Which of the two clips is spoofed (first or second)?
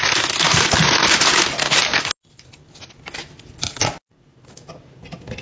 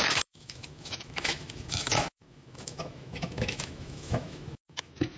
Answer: second